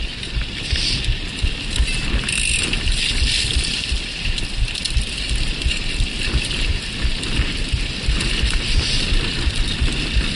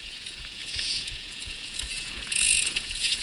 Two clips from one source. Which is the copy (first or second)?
second